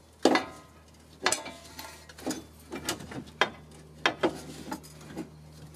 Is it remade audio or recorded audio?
recorded